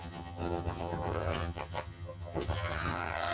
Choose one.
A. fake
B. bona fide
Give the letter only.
A